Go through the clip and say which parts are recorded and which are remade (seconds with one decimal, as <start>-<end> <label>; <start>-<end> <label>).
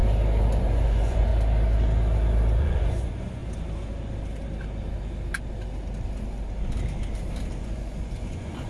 0.0-0.6 recorded; 0.6-1.3 remade; 1.3-2.6 recorded; 2.6-3.4 remade; 3.4-7.6 recorded; 7.6-8.7 remade